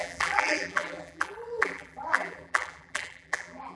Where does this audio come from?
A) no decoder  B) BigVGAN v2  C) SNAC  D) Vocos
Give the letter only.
B